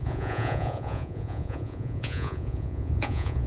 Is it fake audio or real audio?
fake